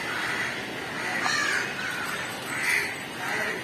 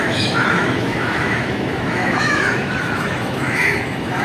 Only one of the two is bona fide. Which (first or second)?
first